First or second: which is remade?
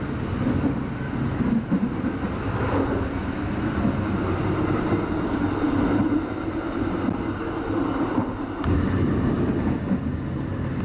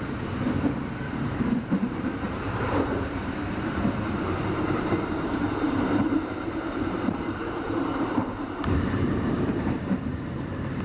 second